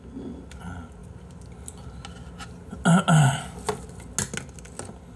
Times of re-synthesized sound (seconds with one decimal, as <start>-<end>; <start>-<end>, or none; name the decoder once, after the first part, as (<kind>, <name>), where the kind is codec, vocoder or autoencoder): none